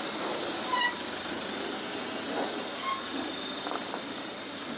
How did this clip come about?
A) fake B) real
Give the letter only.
B